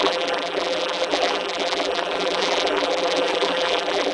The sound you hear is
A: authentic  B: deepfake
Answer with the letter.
B